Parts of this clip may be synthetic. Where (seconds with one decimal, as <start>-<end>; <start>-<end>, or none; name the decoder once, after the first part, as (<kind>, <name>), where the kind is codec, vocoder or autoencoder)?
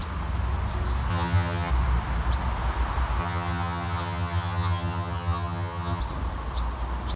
1.1-1.7 (vocoder, HiFi-GAN); 3.2-6.0